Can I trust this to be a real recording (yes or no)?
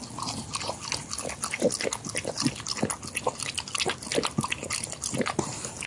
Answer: yes